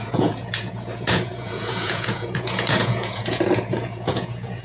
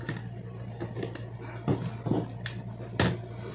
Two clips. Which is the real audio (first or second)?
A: second